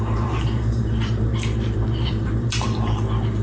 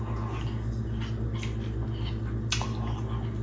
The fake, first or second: first